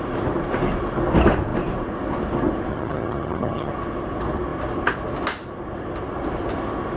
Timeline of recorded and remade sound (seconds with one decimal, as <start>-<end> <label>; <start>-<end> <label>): 0.0-2.7 recorded; 2.7-3.7 remade; 3.7-7.0 recorded